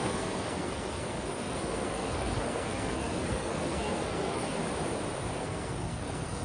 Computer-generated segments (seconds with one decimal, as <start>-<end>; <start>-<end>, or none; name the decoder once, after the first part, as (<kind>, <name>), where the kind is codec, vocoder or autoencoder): 0.0-4.6 (codec, SNAC); 5.4-6.4

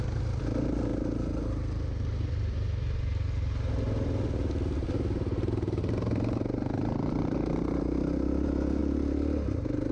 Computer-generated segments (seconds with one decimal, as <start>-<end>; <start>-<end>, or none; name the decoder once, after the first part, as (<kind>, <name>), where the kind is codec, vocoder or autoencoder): none